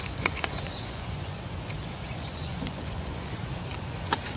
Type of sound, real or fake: fake